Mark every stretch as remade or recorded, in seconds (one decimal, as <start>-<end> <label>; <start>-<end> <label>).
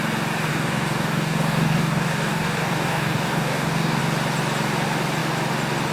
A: 0.0-0.5 recorded; 0.5-4.0 remade; 4.0-5.9 recorded